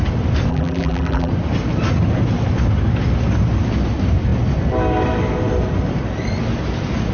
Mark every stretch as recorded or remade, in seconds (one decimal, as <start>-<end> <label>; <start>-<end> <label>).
0.0-0.5 recorded; 0.5-1.3 remade; 1.3-7.1 recorded